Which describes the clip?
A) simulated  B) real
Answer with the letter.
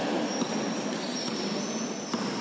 B